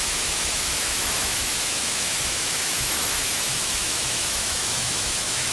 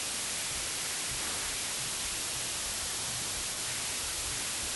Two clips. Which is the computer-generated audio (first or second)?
first